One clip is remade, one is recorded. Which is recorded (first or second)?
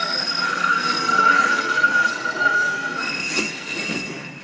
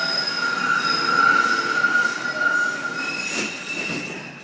second